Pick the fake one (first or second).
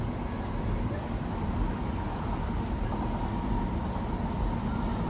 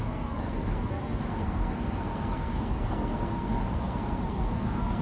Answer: second